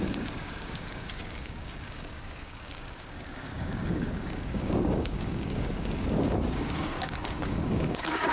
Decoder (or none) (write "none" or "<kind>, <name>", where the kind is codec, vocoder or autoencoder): codec, DAC